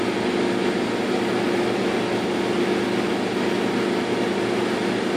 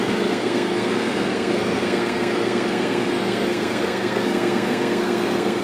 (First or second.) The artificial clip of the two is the second